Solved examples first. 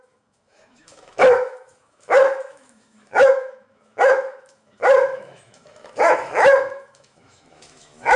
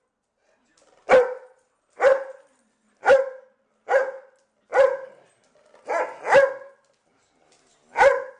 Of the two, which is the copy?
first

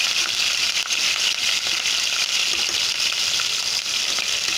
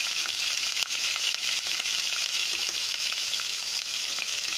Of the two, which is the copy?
second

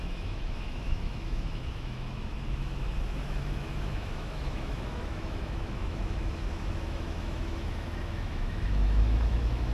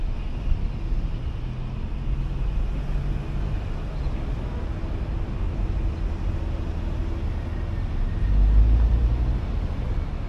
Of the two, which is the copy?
first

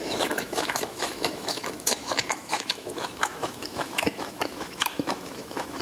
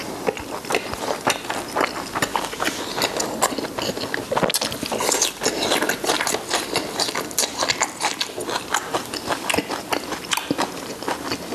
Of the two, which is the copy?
first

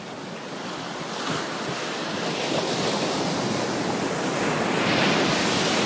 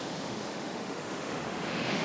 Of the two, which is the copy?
second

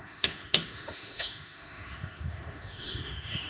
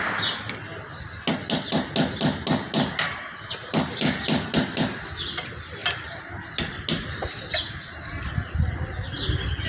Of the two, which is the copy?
first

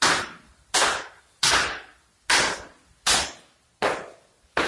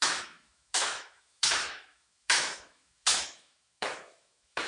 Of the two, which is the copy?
second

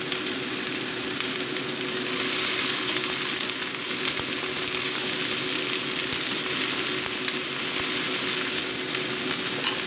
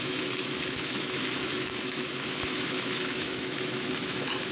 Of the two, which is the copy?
second